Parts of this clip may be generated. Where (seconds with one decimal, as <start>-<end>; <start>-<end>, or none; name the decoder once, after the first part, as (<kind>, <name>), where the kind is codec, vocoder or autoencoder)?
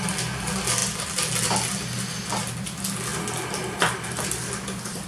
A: none